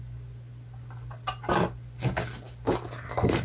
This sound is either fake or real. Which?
real